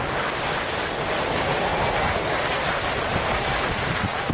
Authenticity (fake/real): real